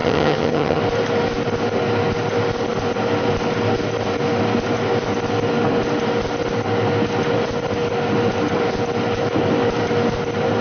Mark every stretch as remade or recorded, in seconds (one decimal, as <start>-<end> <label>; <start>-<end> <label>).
0.0-0.8 remade; 0.8-10.6 recorded